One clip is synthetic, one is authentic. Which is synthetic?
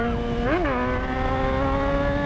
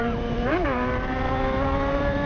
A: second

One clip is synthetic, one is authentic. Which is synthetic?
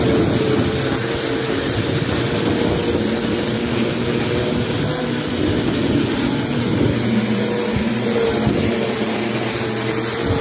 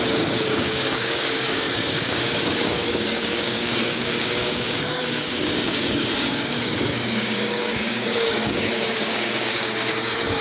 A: second